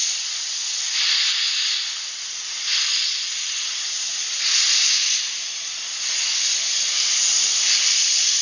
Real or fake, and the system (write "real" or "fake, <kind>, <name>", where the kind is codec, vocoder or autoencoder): real